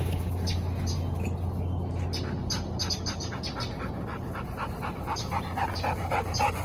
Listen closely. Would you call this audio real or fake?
real